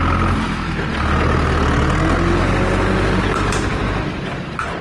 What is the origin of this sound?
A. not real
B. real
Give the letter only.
B